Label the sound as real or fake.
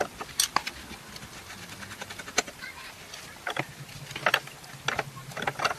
real